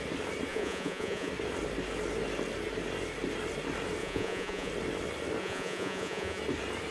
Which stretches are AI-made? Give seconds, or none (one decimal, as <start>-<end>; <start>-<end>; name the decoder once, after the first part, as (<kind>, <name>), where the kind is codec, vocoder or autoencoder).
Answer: 0.5-1.3 (vocoder, Vocos); 4.0-4.7; 5.4-6.4